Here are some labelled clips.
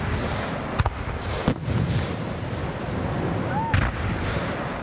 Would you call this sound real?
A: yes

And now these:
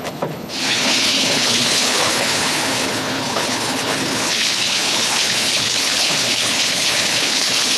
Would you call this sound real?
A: no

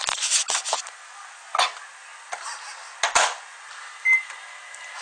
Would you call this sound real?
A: yes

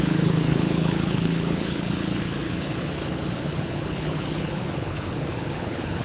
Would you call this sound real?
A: no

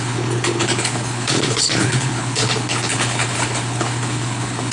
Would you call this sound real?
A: no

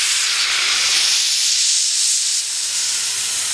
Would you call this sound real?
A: yes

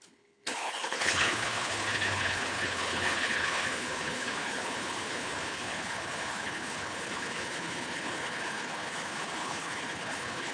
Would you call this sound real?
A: no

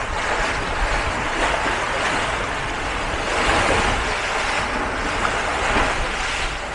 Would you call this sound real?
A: yes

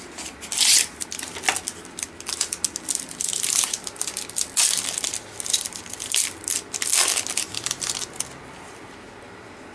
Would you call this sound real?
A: yes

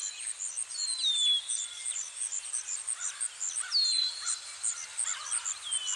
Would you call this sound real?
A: yes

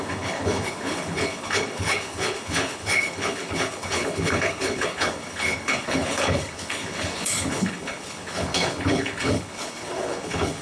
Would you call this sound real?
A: no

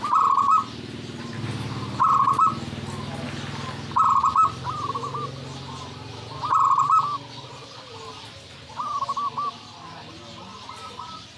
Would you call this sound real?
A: yes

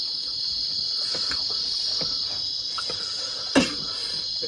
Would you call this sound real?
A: yes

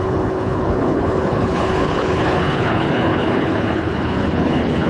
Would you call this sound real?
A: no